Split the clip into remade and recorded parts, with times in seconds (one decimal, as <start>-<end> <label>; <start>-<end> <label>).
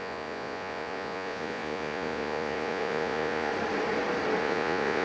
0.0-3.5 remade; 3.5-4.4 recorded; 4.4-5.0 remade